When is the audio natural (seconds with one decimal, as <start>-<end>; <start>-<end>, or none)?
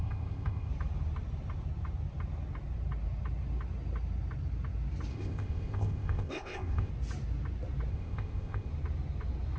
0.7-5.1; 6.9-7.9; 8.7-9.6